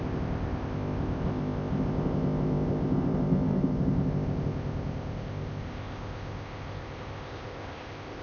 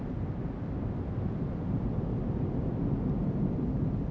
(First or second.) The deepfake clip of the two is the first